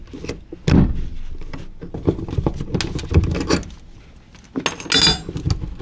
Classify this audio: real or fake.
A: real